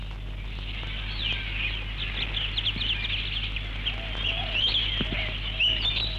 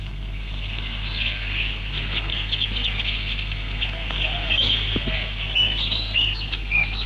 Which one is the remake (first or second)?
second